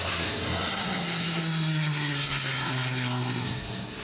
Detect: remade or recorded remade